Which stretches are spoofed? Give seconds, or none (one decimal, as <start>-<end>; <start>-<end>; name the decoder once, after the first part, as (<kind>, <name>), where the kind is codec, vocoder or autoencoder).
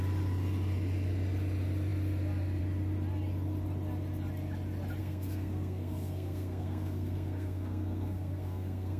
5.0-9.0 (codec, SNAC)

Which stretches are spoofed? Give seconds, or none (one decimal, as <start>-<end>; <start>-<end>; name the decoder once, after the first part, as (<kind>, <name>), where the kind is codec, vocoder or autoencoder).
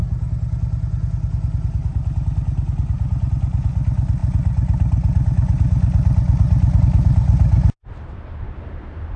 none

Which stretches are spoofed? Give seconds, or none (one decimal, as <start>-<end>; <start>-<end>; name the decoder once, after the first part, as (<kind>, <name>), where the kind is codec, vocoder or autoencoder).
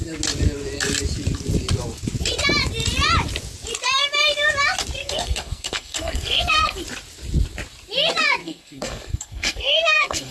5.0-6.8 (codec, SNAC); 8.4-10.3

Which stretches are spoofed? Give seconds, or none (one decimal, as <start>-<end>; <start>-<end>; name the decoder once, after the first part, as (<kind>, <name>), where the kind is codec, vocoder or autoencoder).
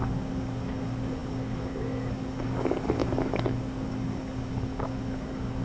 0.0-5.6 (codec, DAC)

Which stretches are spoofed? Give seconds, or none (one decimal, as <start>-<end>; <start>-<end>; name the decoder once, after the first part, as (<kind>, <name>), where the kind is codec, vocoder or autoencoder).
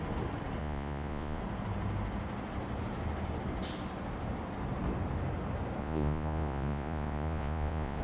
0.6-1.4 (vocoder, Vocos); 5.8-8.0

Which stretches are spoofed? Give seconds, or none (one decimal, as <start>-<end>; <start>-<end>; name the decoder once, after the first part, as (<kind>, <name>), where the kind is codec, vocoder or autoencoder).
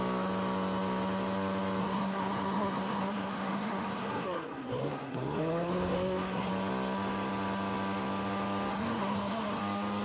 1.8-6.5 (codec, SNAC); 8.7-9.6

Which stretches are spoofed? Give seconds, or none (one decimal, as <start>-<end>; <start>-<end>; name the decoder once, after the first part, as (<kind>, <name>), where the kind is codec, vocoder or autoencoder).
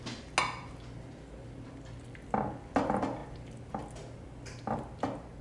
none